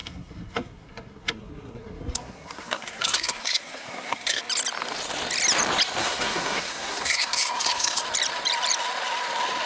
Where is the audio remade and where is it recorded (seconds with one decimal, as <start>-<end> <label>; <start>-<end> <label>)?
0.0-4.4 remade; 4.4-6.0 recorded; 6.0-8.0 remade; 8.0-9.7 recorded